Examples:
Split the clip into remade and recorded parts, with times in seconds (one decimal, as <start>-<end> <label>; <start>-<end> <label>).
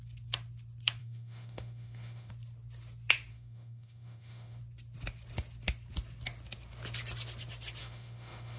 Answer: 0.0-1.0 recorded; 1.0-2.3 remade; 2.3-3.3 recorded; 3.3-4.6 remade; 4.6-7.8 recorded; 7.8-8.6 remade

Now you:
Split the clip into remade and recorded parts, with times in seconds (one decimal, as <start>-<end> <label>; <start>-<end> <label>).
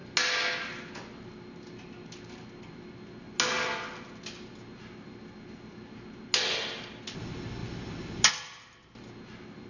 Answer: 0.0-9.7 recorded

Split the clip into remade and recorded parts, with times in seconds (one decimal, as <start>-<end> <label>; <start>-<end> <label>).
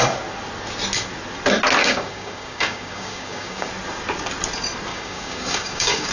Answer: 0.0-1.8 recorded; 1.8-3.7 remade; 3.7-4.9 recorded; 4.9-6.1 remade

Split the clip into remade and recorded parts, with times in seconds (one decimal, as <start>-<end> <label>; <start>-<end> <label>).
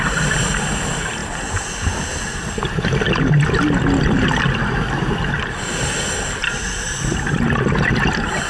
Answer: 0.0-1.2 remade; 1.2-5.1 recorded; 5.1-6.4 remade; 6.4-7.1 recorded; 7.1-8.5 remade